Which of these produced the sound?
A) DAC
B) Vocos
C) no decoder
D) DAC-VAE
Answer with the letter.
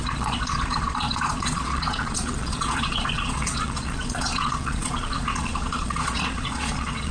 B